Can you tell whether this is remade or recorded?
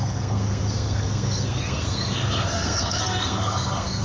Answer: remade